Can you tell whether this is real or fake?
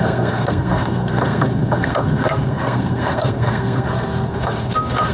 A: fake